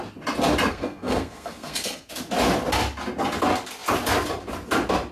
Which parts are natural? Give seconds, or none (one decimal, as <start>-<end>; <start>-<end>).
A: 0.0-0.7; 2.1-5.1